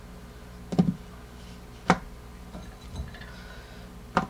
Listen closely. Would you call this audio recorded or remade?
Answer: recorded